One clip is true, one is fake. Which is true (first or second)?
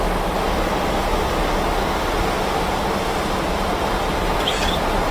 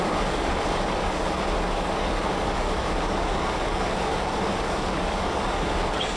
first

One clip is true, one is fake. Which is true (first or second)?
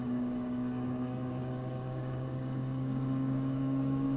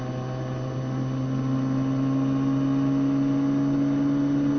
second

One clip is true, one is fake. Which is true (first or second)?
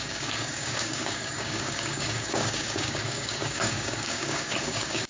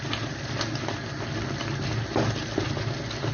second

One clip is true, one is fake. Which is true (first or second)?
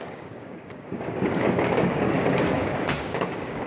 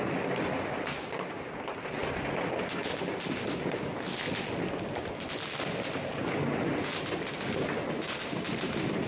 second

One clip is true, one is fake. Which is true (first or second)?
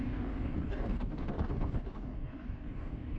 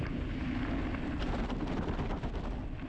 second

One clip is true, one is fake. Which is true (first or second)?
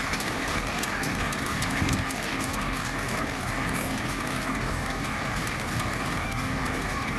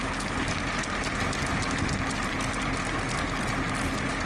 second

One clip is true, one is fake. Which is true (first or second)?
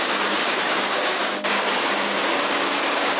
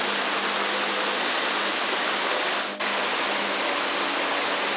second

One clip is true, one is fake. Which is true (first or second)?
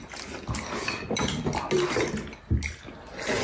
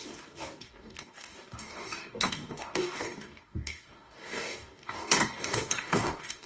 first